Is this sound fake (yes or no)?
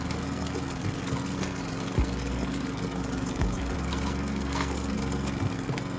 yes